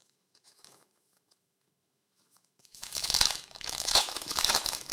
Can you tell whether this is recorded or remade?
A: remade